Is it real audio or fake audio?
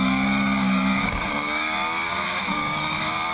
fake